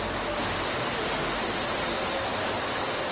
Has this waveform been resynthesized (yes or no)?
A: no